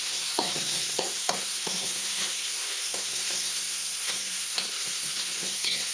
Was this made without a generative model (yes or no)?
no